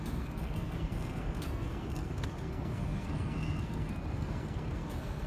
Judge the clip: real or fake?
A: fake